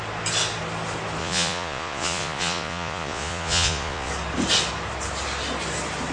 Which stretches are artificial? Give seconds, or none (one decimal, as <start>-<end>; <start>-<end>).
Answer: 1.2-4.1